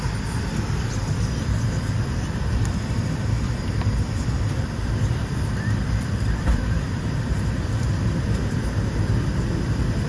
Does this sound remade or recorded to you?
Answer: remade